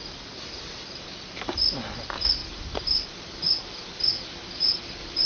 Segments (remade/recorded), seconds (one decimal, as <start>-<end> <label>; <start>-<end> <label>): 0.0-5.3 recorded